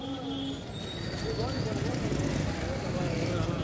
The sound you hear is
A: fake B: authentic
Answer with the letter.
B